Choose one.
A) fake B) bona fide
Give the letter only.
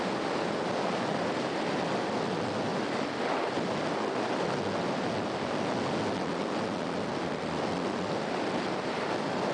B